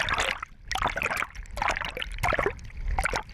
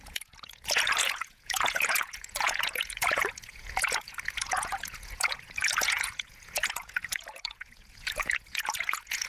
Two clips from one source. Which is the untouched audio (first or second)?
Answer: first